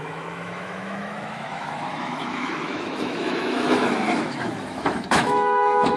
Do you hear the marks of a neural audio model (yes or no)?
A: yes